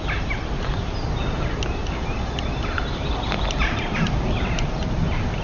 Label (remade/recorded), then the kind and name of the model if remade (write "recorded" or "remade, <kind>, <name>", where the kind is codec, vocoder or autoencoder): recorded